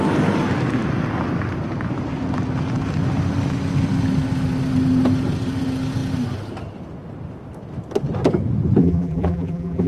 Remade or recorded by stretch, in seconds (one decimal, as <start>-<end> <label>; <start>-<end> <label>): 0.0-8.8 recorded; 8.8-9.9 remade